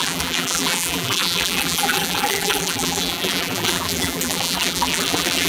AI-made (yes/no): yes